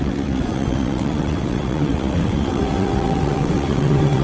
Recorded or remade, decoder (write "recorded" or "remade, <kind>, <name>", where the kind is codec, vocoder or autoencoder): remade, vocoder, WaveNeXt